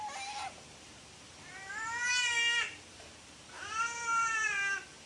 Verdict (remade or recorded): remade